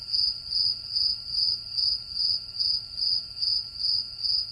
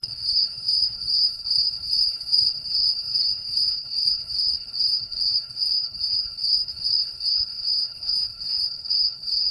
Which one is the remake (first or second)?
second